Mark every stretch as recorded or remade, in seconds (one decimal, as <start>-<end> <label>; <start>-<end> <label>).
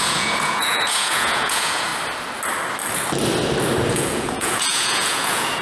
0.0-1.9 remade; 1.9-3.9 recorded; 3.9-5.6 remade